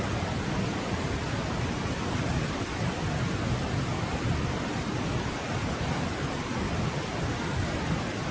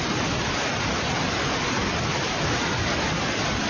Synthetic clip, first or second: first